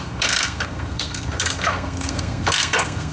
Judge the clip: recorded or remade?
remade